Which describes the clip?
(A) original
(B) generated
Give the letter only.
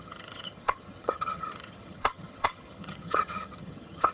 B